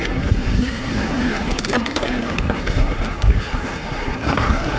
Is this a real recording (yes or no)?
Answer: no